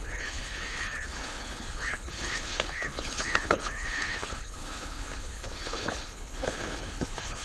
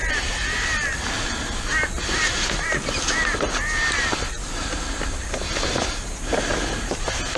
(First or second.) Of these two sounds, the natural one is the second